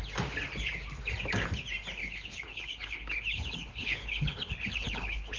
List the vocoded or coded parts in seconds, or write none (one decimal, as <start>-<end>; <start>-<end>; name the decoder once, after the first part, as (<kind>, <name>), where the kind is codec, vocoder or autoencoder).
2.0-5.4 (codec, HILCodec)